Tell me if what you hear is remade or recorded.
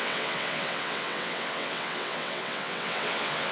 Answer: remade